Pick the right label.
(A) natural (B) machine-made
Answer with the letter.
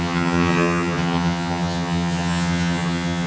B